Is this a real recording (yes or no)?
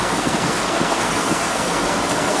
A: no